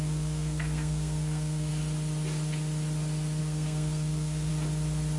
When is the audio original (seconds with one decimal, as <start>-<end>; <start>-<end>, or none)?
1.7-3.4; 4.5-5.2

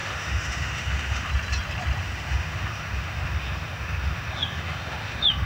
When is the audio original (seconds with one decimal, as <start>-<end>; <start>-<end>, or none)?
1.3-2.0

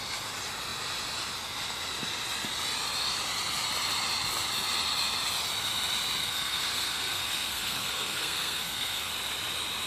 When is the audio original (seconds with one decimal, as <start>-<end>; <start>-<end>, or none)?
0.0-6.2; 9.1-9.9

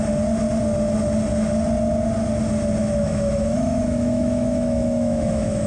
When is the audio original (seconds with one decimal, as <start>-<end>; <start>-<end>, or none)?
0.0-2.8

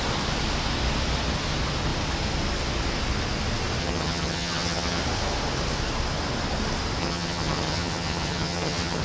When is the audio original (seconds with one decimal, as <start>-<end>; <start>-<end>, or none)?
0.0-3.8; 5.0-7.0

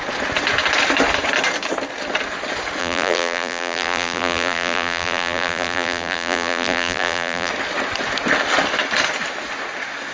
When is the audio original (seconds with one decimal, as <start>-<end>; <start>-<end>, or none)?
0.0-2.8; 7.5-10.1